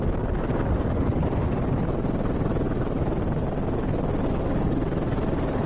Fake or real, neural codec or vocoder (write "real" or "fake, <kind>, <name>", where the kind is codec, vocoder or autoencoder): real